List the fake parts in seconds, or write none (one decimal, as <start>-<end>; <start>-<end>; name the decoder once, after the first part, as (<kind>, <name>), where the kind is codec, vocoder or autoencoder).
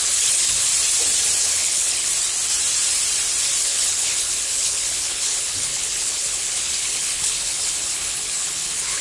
0.0-0.7 (codec, HILCodec); 1.4-2.1; 3.6-9.0